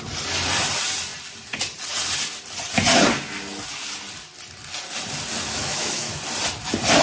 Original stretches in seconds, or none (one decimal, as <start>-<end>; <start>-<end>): 0.0-5.4; 6.2-7.0